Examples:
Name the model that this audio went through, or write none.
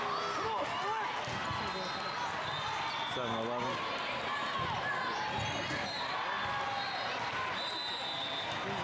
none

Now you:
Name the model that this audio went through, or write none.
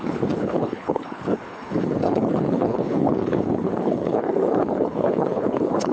codec, HILCodec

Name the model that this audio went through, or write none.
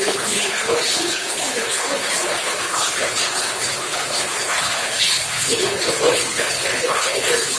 codec, HILCodec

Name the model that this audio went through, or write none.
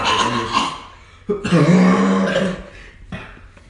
none